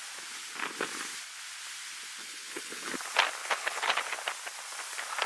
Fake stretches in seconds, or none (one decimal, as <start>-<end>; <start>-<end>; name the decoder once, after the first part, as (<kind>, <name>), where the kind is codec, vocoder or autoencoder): 2.2-2.9 (codec, HILCodec); 3.4-4.0